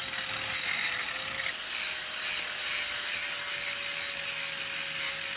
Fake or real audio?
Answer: real